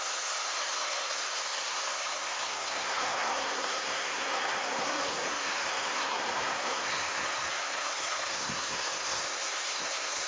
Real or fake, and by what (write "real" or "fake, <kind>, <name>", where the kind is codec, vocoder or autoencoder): fake, codec, SNAC